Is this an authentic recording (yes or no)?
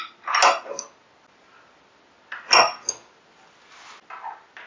yes